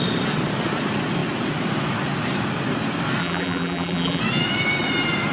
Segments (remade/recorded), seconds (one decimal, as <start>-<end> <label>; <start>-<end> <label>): 0.0-3.2 recorded; 3.2-4.2 remade; 4.2-5.3 recorded